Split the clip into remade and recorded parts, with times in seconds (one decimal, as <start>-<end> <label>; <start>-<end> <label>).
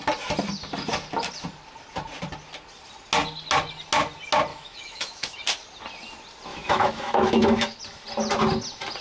0.0-4.5 recorded; 4.5-5.4 remade; 5.4-6.5 recorded; 6.5-7.8 remade; 7.8-9.0 recorded